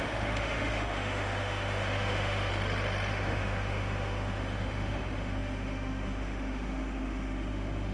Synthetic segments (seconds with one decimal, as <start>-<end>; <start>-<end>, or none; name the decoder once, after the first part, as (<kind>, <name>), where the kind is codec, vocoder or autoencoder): 0.0-2.5 (autoencoder, DAC-VAE); 3.1-7.9